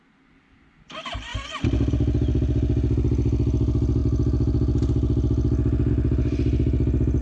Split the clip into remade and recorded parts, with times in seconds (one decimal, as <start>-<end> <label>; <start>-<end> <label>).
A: 0.0-7.2 recorded

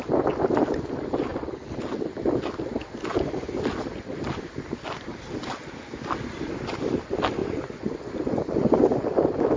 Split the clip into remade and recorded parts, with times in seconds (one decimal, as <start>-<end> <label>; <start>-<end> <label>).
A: 0.0-7.4 recorded; 7.4-8.1 remade; 8.1-9.6 recorded

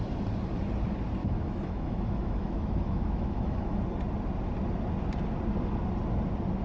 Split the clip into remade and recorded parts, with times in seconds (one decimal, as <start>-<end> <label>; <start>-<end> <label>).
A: 0.0-1.2 recorded; 1.2-3.8 remade; 3.8-6.6 recorded

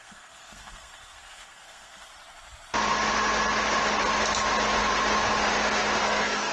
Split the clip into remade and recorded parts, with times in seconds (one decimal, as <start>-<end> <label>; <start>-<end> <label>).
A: 0.0-2.1 remade; 2.1-6.0 recorded; 6.0-6.5 remade

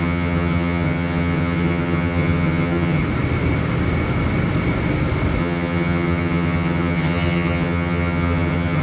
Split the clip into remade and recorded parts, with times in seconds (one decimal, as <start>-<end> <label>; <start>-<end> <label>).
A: 0.0-3.0 remade; 3.0-5.4 recorded; 5.4-8.8 remade